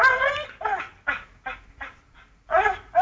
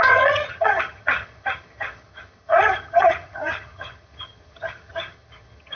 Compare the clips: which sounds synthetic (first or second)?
second